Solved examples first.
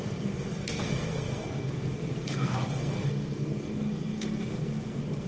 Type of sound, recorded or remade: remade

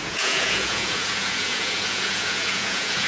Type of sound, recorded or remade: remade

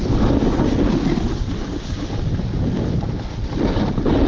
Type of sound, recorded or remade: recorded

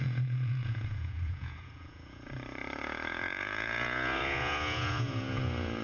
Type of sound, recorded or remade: remade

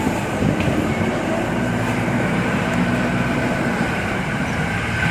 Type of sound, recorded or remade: remade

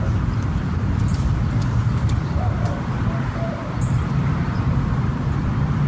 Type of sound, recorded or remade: remade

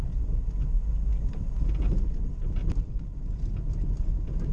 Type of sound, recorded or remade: recorded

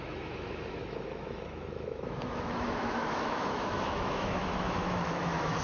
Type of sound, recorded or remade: remade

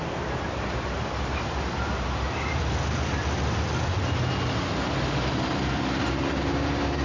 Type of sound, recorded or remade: recorded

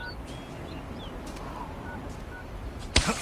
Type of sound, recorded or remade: recorded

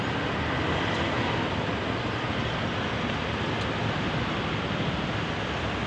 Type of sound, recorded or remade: recorded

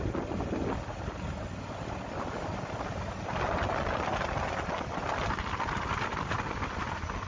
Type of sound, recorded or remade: recorded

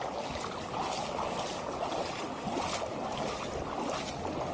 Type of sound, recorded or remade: recorded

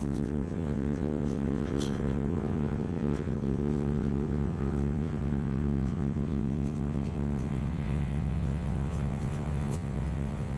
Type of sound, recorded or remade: remade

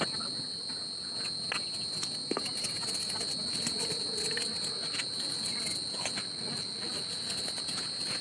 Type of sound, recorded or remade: recorded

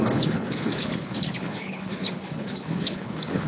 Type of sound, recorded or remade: remade